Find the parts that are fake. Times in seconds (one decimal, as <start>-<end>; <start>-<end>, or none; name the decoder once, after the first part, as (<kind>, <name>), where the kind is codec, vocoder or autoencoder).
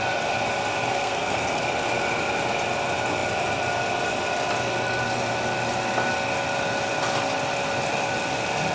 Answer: 0.9-1.6 (codec, SNAC)